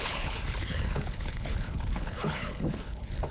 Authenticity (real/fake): fake